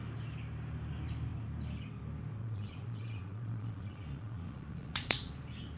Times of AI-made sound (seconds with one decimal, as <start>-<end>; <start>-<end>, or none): 2.4-5.3